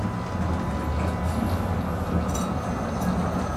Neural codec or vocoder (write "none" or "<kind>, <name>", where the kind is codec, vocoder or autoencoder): none